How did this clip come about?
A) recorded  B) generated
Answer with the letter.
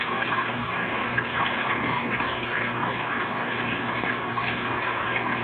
B